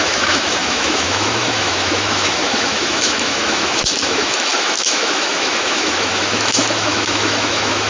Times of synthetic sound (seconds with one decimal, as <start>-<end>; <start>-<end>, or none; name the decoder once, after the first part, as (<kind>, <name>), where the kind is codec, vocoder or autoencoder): 0.0-7.9 (autoencoder, DAC-VAE)